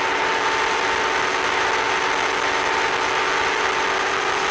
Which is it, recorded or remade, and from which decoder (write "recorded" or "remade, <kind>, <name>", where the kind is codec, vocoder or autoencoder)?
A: recorded